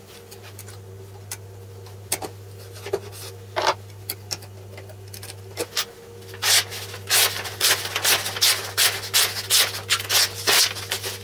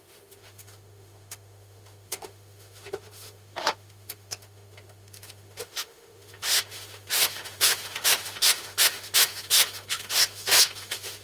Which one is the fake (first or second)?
second